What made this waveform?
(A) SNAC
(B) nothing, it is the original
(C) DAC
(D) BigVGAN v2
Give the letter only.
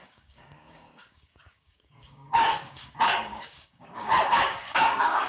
C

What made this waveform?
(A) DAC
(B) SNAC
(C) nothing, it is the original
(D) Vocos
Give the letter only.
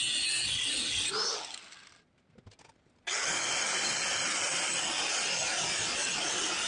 C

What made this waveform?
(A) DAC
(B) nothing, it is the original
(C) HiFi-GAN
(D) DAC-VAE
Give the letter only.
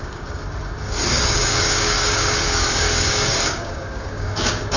A